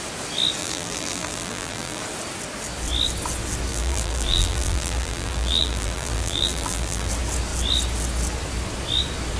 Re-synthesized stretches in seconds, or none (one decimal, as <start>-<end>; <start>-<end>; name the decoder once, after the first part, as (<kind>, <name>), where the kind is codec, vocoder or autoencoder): 0.6-2.0 (vocoder, BigVGAN v2); 3.7-7.1